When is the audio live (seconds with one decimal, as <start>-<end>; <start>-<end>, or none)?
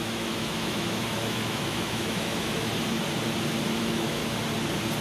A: 2.7-3.8; 4.2-5.0